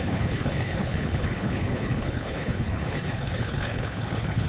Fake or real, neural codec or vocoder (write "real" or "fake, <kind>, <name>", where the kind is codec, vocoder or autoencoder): fake, codec, HILCodec